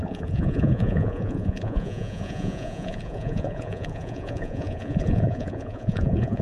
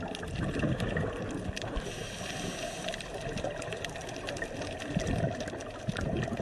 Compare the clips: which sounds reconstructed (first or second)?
first